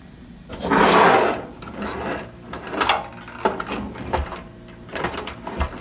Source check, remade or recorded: recorded